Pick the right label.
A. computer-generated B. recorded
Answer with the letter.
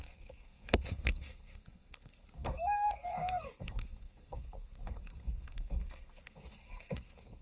A